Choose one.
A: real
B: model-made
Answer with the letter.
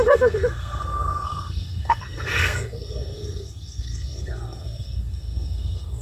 B